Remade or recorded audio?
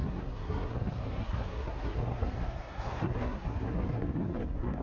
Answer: remade